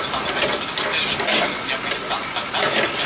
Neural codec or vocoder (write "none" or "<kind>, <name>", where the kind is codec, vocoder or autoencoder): none